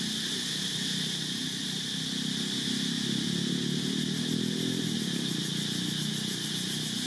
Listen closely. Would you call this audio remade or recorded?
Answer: recorded